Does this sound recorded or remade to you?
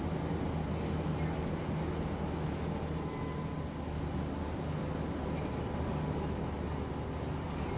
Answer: recorded